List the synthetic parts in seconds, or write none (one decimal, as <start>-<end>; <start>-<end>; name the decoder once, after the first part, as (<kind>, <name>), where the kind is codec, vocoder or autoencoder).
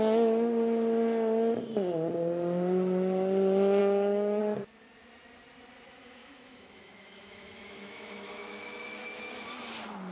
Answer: 3.8-4.4 (autoencoder, DAC-VAE); 6.2-9.7